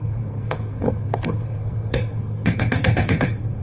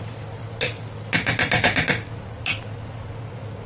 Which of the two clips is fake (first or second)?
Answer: first